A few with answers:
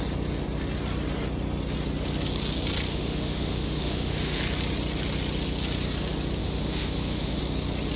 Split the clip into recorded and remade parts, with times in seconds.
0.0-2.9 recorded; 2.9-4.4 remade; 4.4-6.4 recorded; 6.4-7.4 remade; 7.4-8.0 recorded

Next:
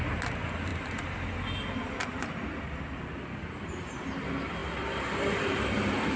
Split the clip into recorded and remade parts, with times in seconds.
0.0-6.2 recorded